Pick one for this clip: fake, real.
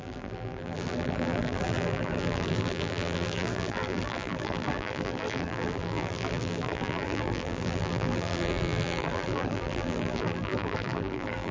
fake